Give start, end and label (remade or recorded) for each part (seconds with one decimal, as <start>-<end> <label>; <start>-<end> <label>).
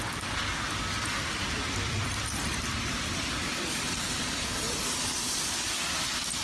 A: 0.0-0.5 recorded; 0.5-4.2 remade; 4.2-6.4 recorded